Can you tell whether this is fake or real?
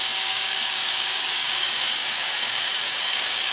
fake